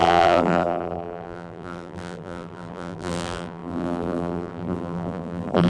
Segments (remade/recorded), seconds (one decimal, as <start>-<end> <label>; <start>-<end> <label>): 0.0-5.7 remade

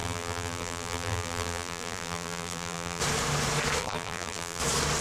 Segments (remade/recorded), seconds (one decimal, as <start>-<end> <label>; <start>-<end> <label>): 0.0-3.0 remade; 3.0-3.8 recorded; 3.8-4.6 remade; 4.6-5.0 recorded

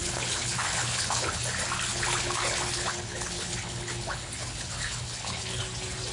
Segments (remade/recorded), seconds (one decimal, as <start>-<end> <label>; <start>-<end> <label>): 0.0-1.4 remade; 1.4-1.9 recorded; 1.9-5.6 remade; 5.6-6.1 recorded